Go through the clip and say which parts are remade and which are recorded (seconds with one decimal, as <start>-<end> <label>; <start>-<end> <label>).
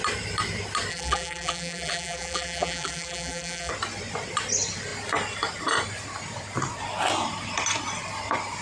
0.0-0.9 recorded; 0.9-3.7 remade; 3.7-8.6 recorded